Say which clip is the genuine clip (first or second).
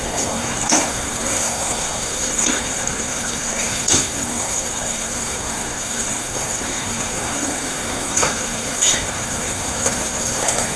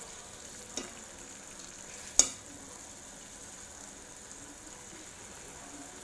second